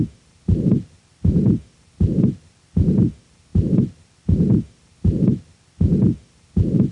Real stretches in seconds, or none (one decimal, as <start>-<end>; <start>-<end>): 0.0-6.9